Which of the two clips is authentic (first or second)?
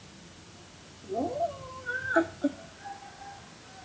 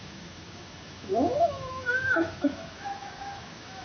first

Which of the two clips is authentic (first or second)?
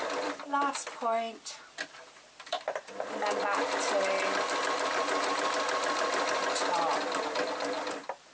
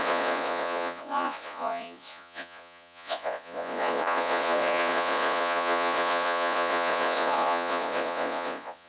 first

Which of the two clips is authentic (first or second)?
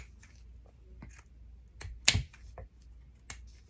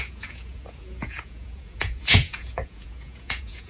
first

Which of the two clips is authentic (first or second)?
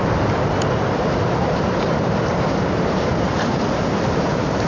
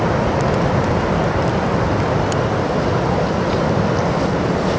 second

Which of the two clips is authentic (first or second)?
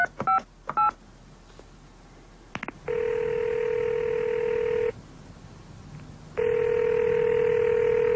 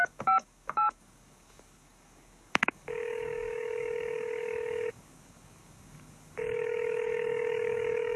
first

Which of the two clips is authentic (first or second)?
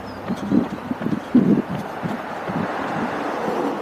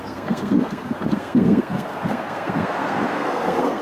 first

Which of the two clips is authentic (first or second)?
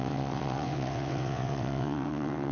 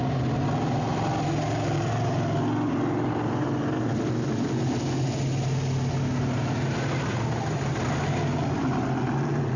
second